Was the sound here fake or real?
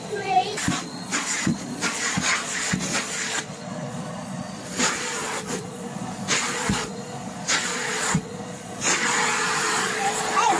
fake